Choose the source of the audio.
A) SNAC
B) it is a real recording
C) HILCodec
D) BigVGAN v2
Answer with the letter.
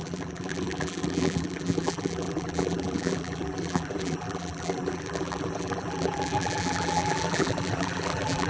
D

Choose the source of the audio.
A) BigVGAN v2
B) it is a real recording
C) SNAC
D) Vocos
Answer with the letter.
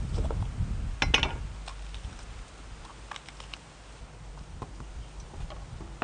B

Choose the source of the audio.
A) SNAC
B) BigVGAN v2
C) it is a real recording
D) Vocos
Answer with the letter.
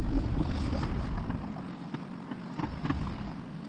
C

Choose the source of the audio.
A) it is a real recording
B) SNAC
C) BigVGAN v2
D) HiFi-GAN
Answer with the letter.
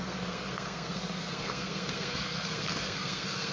B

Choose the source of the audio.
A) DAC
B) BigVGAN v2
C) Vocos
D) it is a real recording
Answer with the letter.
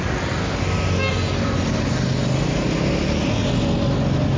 D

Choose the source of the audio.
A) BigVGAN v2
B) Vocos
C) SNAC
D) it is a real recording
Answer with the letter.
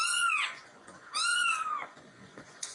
B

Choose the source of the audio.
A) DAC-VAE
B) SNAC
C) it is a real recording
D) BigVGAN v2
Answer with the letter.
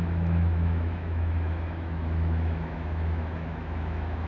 A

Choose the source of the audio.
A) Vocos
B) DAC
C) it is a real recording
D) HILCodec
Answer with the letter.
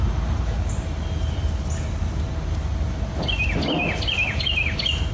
C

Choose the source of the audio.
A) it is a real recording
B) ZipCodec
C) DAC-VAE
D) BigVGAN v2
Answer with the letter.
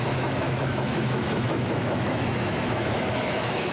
C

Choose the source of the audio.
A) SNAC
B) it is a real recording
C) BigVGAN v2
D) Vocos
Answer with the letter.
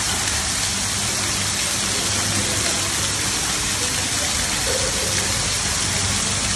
B